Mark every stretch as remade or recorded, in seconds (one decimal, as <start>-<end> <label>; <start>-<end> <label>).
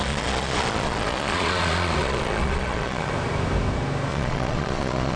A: 0.0-3.1 remade; 3.1-4.1 recorded; 4.1-5.2 remade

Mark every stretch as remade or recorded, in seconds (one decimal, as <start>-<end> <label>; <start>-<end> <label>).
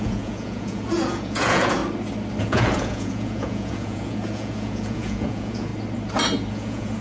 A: 0.0-1.8 remade; 1.8-2.4 recorded; 2.4-5.7 remade; 5.7-6.5 recorded; 6.5-7.0 remade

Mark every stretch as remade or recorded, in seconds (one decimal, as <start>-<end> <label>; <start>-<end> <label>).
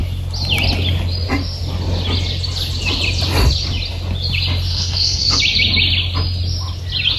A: 0.0-4.7 recorded; 4.7-5.4 remade; 5.4-7.2 recorded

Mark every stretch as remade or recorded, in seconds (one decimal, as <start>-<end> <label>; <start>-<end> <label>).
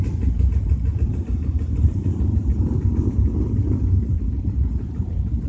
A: 0.0-5.5 remade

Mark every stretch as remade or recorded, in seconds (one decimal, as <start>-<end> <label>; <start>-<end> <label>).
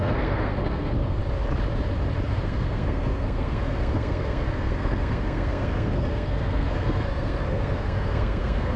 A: 0.0-1.2 remade; 1.2-2.3 recorded; 2.3-8.8 remade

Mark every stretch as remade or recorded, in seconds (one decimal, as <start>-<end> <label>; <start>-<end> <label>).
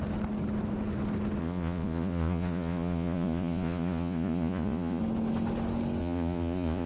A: 0.0-1.4 recorded; 1.4-5.0 remade; 5.0-6.0 recorded; 6.0-6.9 remade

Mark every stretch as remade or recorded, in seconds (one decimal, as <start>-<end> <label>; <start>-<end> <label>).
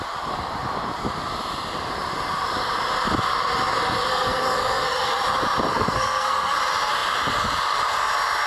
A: 0.0-4.1 recorded; 4.1-5.1 remade; 5.1-5.7 recorded; 5.7-6.6 remade; 6.6-8.5 recorded